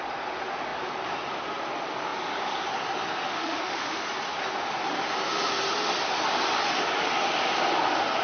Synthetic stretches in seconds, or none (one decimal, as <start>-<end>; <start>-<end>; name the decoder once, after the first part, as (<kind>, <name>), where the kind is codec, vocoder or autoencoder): 3.3-4.1 (autoencoder, DAC-VAE)